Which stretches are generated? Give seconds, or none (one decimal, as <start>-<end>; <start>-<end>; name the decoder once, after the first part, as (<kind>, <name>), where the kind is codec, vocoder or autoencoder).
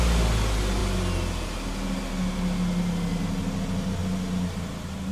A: none